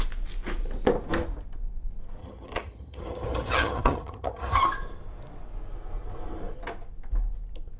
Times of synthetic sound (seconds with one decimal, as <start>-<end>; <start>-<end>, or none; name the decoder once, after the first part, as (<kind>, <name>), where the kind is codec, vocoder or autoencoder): 2.2-4.6 (vocoder, HiFi-GAN)